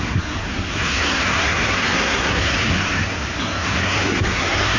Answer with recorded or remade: remade